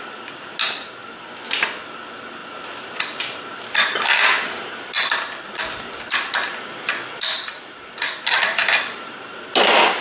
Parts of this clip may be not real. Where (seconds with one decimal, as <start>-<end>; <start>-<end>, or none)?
none